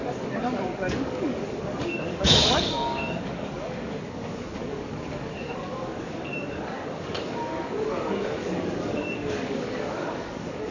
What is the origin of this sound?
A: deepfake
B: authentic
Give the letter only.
A